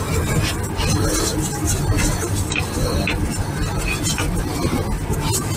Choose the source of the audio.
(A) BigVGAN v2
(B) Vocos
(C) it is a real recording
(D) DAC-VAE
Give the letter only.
A